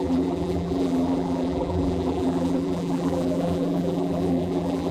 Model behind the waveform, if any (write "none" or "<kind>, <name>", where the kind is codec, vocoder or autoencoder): vocoder, BigVGAN v2